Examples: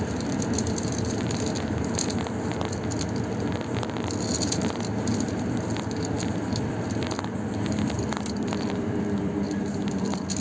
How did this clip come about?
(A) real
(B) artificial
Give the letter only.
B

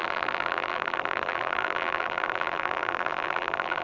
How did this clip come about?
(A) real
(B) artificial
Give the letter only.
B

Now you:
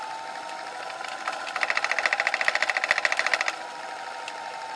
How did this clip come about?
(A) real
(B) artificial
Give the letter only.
A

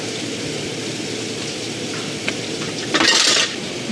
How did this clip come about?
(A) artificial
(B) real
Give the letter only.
B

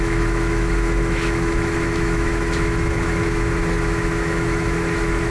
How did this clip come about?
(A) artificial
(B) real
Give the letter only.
A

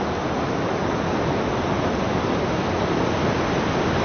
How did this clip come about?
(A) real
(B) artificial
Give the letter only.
A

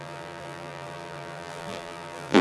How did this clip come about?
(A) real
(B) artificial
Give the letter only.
B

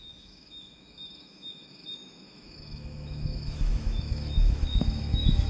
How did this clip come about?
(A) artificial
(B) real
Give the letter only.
A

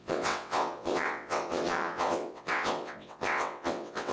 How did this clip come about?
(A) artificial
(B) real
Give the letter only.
A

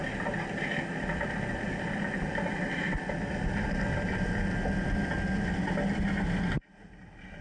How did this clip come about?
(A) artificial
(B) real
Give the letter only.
B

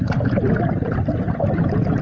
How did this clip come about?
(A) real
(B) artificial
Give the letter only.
A